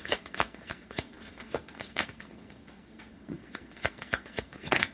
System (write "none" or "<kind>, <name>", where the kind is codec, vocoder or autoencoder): codec, SNAC